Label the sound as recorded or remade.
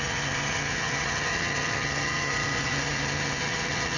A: remade